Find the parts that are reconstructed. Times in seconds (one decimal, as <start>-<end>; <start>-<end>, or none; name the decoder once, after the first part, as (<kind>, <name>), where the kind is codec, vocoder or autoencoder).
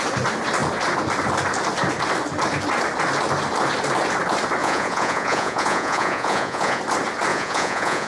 4.6-6.8 (vocoder, Vocos); 7.3-8.1